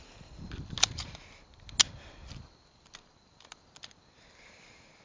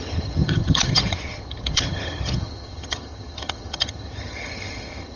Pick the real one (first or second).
first